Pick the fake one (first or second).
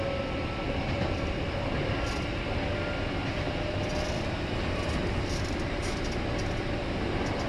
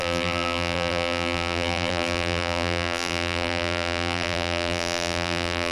second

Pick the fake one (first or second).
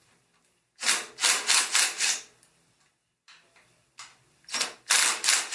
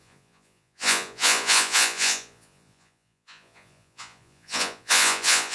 second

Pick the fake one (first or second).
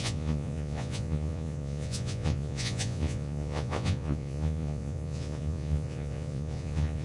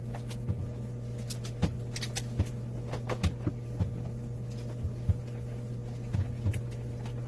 first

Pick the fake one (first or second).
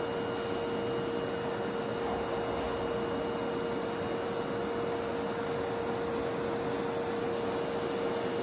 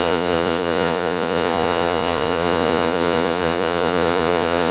second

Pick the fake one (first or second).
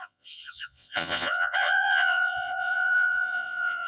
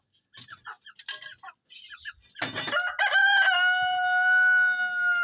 first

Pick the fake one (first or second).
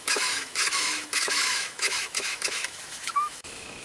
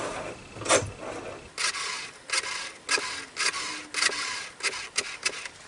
first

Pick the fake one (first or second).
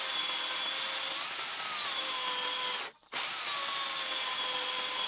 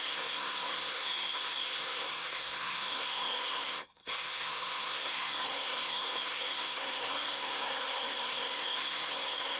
second